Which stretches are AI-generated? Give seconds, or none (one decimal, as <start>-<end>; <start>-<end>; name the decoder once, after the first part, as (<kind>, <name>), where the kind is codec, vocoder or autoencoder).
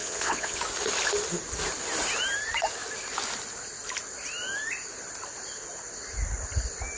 0.0-0.6 (vocoder, WaveNeXt)